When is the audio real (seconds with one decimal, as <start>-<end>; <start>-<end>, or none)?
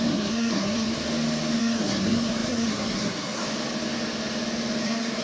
1.0-1.6; 3.4-4.8